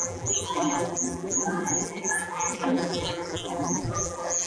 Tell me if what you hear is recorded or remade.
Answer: remade